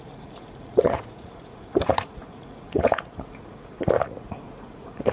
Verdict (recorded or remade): remade